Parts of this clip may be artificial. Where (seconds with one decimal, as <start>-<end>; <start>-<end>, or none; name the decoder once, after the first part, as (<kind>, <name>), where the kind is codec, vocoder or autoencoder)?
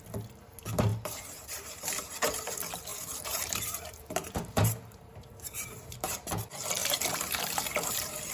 0.9-2.1 (vocoder, BigVGAN v2); 2.9-6.3; 6.8-8.3